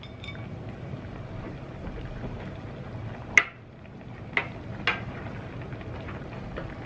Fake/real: real